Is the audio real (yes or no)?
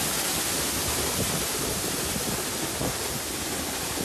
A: yes